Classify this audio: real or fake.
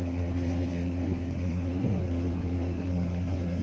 fake